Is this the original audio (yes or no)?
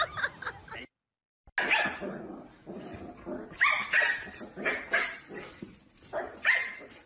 yes